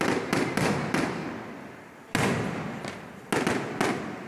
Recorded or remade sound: recorded